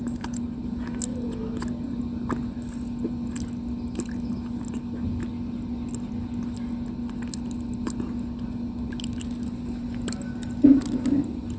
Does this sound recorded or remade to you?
recorded